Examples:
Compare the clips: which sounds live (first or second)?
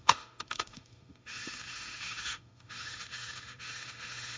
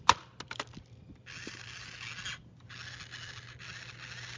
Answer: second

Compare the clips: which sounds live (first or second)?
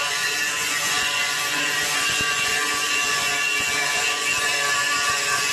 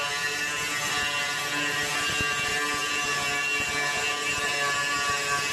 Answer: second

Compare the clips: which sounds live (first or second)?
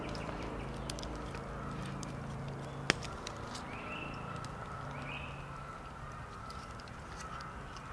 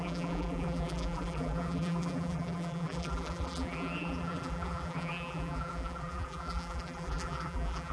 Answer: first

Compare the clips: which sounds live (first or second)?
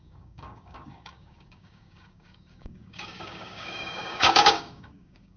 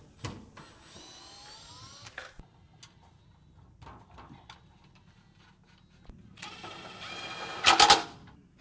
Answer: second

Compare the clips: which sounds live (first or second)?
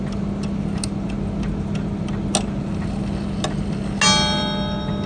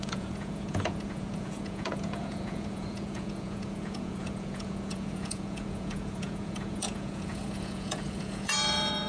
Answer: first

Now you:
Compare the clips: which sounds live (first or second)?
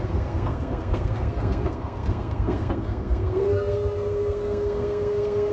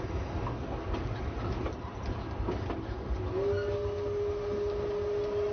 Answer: second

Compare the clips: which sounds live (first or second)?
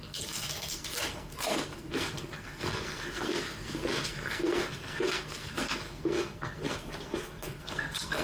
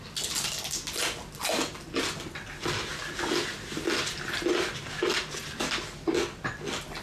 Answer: second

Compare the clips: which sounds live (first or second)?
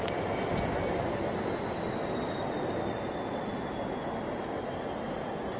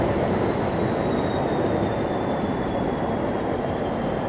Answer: first